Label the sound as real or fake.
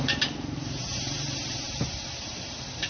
fake